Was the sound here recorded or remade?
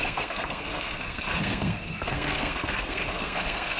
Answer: remade